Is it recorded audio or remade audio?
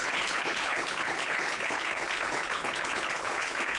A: remade